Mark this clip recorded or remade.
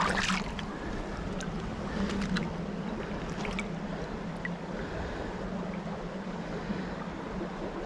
recorded